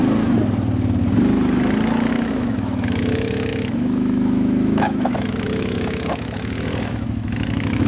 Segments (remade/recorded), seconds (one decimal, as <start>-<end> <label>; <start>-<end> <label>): 0.0-2.1 recorded; 2.1-7.9 remade